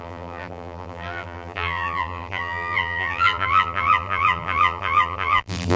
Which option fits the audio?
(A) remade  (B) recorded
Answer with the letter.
A